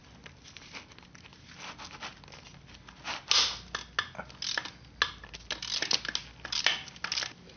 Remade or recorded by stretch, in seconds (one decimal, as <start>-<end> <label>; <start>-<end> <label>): 0.0-7.6 recorded